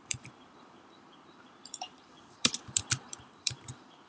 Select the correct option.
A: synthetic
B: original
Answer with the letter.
A